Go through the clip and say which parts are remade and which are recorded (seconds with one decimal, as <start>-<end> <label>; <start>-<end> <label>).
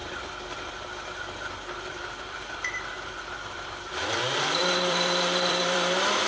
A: 0.0-1.8 recorded; 1.8-6.3 remade